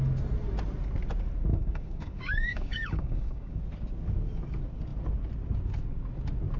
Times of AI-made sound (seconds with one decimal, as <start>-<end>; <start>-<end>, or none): 1.5-3.6